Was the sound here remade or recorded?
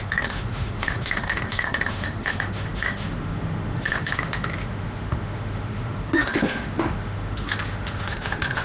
remade